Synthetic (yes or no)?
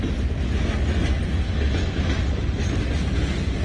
no